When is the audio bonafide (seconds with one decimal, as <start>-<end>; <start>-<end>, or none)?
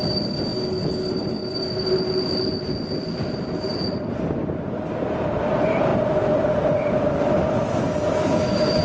0.5-1.6